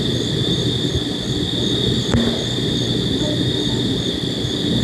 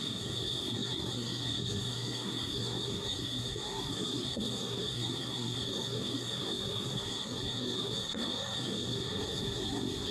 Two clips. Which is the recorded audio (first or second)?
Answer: first